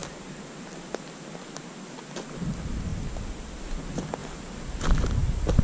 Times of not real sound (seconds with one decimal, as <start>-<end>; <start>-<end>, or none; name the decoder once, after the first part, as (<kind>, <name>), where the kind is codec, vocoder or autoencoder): none

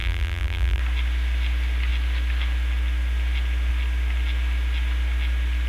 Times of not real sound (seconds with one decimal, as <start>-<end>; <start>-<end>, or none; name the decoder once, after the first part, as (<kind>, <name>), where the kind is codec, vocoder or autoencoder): 0.0-0.8 (vocoder, BigVGAN v2)